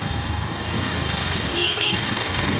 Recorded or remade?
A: remade